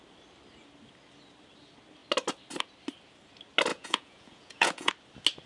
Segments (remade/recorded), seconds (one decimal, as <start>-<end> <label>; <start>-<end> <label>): 0.0-3.7 recorded; 3.7-4.9 remade; 4.9-5.5 recorded